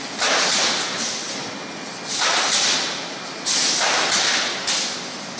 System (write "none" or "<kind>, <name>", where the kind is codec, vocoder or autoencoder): none